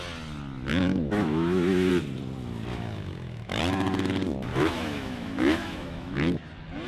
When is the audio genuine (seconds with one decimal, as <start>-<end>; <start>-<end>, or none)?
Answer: 0.0-0.7; 1.9-2.7; 3.6-4.5; 6.4-6.9